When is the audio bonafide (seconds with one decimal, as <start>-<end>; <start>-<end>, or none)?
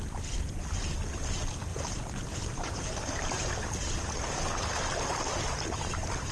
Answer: 0.0-1.7; 4.4-6.3